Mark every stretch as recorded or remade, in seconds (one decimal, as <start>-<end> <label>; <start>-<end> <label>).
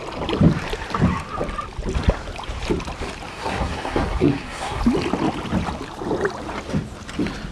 0.0-3.3 recorded; 3.3-4.8 remade; 4.8-7.5 recorded